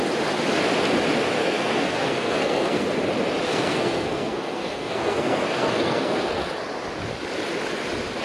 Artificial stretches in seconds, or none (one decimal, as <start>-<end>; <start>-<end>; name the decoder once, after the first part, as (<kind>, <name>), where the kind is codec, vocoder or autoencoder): 1.4-2.9 (codec, SNAC); 3.5-6.5